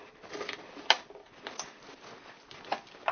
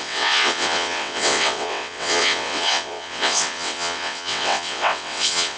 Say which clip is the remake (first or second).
second